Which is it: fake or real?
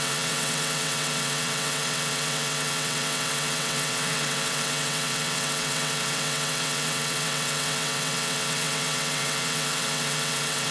fake